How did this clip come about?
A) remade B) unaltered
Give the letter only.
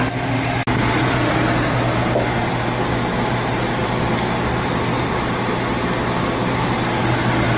B